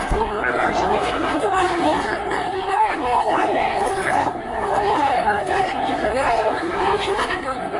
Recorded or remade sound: remade